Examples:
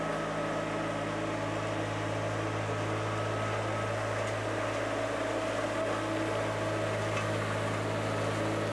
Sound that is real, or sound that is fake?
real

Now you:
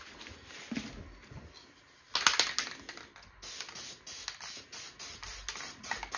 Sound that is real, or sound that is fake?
real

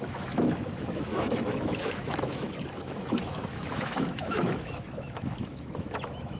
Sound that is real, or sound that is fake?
fake